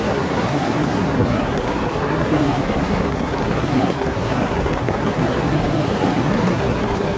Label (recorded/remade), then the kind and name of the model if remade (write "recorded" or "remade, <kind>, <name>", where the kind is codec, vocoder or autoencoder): remade, codec, SNAC